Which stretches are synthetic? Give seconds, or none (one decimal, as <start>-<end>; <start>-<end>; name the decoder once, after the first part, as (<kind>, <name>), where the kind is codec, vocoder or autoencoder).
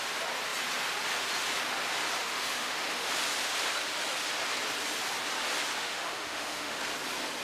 2.2-3.1 (autoencoder, DAC-VAE); 5.8-6.8